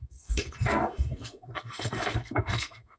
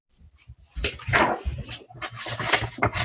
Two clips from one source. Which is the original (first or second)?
second